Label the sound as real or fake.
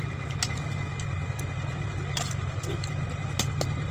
real